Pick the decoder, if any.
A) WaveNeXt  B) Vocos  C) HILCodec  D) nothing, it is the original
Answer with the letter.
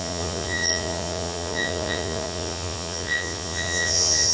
B